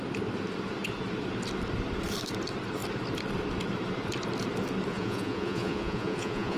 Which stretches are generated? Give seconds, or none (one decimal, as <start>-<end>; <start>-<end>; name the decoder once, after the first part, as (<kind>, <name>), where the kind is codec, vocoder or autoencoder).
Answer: 4.9-6.6 (vocoder, Vocos)